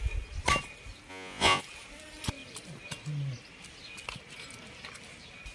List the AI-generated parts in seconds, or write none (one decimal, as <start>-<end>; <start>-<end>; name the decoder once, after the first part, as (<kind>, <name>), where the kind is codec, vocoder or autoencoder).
1.1-1.6 (vocoder, Vocos)